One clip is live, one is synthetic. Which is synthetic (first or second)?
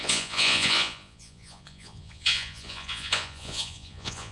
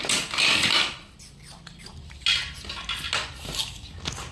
first